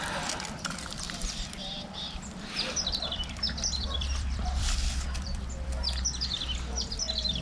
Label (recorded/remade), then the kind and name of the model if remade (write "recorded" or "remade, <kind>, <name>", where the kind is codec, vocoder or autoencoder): remade, vocoder, BigVGAN v2